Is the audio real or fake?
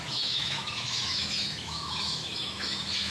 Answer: fake